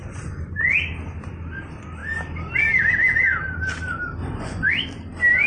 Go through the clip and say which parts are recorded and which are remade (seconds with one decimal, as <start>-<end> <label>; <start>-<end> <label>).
0.0-0.6 remade; 0.6-4.2 recorded; 4.2-4.7 remade; 4.7-5.5 recorded